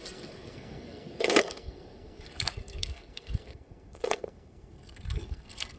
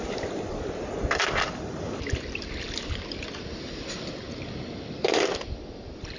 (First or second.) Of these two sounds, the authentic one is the second